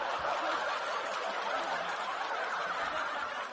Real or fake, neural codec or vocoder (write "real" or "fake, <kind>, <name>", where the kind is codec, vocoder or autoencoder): real